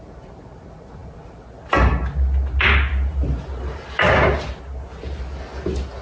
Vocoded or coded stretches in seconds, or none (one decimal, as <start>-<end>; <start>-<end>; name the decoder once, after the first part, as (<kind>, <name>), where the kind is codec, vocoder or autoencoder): none